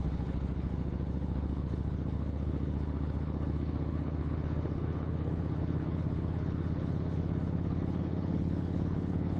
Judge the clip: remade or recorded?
remade